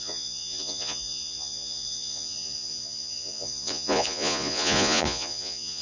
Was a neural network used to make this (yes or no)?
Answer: yes